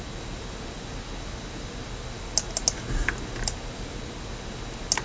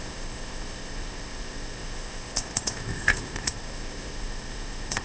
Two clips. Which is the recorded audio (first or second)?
first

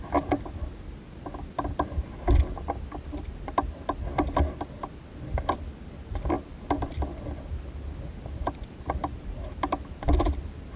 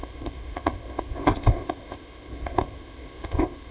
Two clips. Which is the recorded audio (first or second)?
first